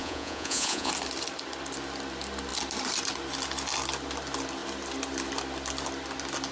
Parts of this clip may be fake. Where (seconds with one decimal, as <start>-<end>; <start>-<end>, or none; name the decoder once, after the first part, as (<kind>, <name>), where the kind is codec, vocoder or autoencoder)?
0.0-0.9 (vocoder, Vocos)